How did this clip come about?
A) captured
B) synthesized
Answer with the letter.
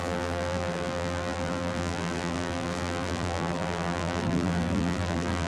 B